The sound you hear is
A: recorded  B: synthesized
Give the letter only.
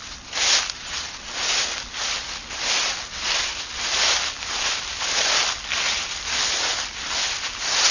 A